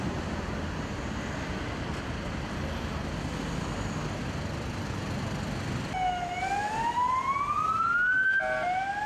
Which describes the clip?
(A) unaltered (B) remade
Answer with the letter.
A